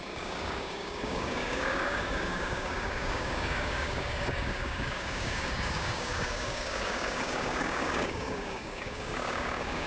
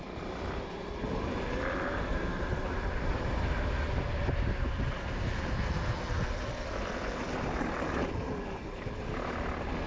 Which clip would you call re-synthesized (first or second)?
first